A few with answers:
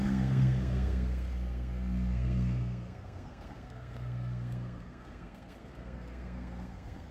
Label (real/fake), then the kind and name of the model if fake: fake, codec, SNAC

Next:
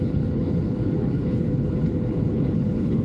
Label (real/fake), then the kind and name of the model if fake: fake, codec, HILCodec